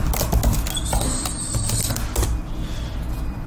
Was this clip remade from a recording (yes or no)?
no